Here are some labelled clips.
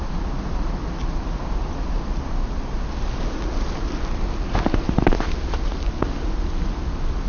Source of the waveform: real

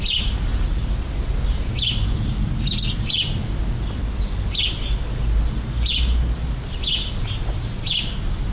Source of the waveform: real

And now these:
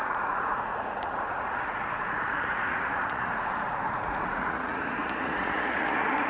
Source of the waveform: fake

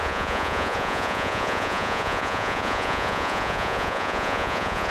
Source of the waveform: fake